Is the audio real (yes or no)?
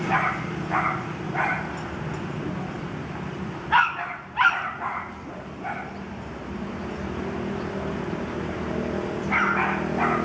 yes